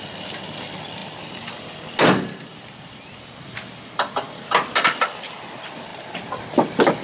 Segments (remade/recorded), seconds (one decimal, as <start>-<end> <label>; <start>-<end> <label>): 0.0-7.0 recorded